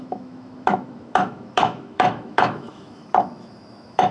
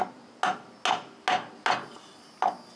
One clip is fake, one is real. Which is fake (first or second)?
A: first